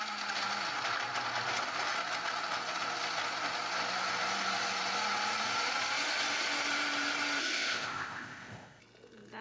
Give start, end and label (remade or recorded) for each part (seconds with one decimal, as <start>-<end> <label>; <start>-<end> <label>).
0.0-7.4 recorded; 7.4-8.8 remade; 8.8-9.4 recorded